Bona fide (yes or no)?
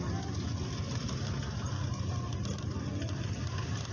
yes